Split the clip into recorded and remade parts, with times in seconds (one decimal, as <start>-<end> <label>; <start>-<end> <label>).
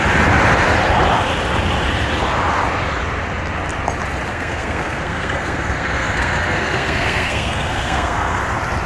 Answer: 0.0-4.3 recorded; 4.3-8.4 remade; 8.4-8.9 recorded